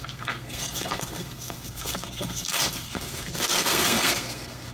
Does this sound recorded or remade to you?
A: remade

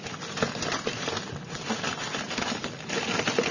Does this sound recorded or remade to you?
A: recorded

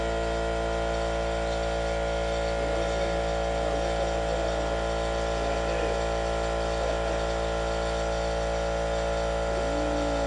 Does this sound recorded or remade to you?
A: recorded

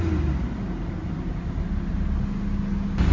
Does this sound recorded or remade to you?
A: recorded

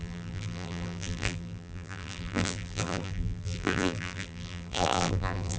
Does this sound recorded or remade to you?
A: remade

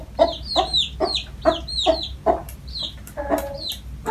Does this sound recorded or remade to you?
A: recorded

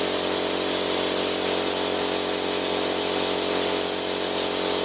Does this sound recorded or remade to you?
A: recorded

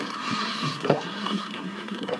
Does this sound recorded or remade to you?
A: remade